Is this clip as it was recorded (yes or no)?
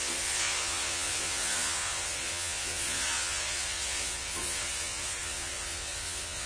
no